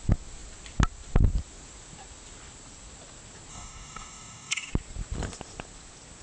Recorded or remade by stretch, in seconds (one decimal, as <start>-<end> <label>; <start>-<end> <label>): 0.0-3.5 recorded; 3.5-4.7 remade; 4.7-6.2 recorded